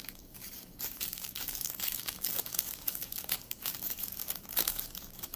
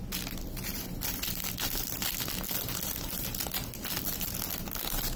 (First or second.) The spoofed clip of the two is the first